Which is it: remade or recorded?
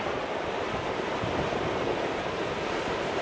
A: recorded